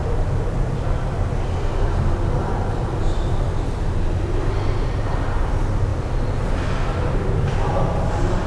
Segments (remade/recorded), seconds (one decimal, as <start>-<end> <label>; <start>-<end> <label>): 0.0-8.5 recorded